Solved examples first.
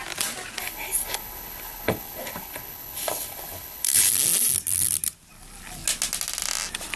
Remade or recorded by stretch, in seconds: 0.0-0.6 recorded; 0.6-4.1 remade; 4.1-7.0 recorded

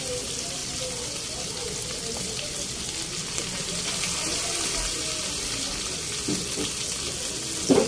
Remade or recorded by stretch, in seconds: 0.0-7.9 recorded

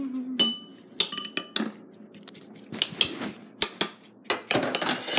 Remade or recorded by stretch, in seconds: 0.0-5.2 recorded